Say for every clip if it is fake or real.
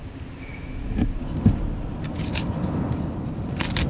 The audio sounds real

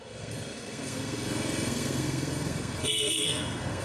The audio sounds fake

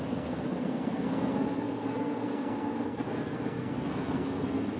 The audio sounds fake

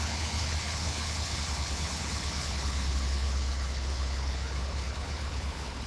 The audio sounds fake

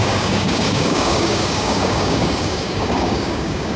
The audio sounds fake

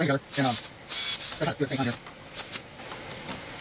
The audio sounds real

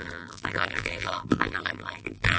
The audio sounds fake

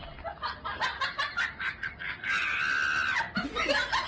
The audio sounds real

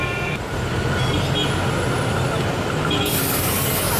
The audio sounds real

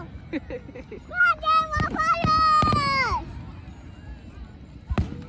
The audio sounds real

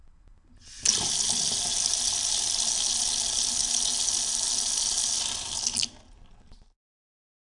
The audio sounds real